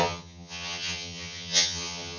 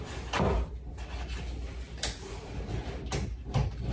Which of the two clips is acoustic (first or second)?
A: second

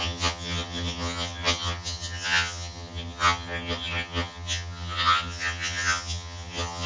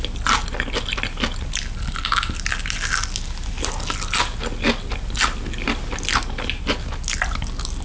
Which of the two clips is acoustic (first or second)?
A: second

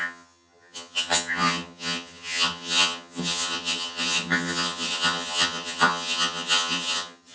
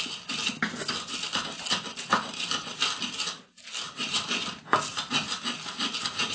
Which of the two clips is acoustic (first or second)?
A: second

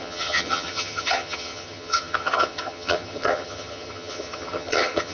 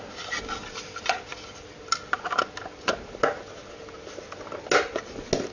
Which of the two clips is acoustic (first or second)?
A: second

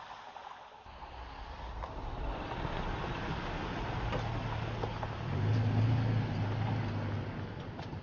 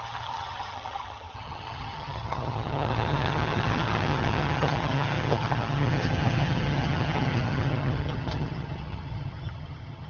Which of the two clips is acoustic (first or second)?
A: first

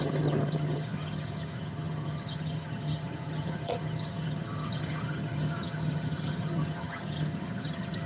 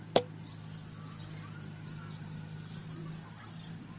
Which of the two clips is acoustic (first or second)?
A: second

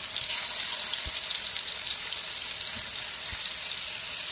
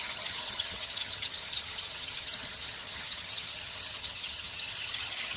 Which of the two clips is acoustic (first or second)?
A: first